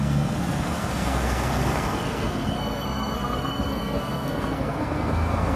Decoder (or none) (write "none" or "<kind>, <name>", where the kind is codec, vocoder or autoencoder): codec, SNAC